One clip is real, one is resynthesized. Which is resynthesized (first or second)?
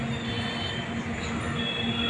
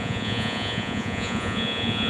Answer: second